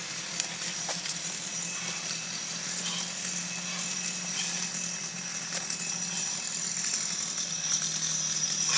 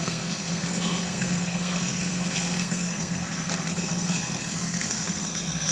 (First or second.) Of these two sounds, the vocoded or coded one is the second